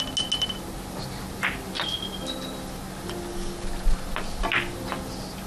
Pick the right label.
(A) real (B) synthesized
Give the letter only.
A